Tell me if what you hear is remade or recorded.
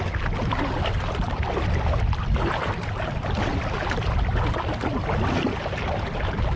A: recorded